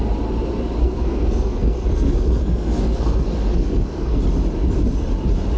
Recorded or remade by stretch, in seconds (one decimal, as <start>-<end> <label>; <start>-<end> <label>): 0.0-0.8 recorded; 0.8-4.2 remade; 4.2-5.6 recorded